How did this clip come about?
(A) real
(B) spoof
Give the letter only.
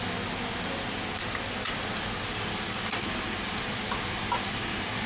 A